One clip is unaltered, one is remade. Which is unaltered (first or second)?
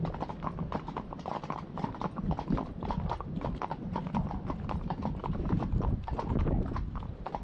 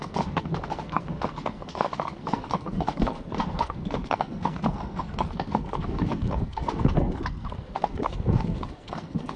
first